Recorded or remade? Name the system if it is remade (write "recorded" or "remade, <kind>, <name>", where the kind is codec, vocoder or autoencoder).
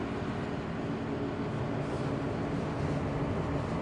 recorded